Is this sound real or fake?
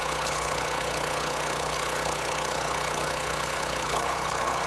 fake